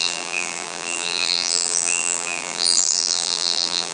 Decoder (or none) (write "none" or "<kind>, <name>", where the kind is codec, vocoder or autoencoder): vocoder, BigVGAN v2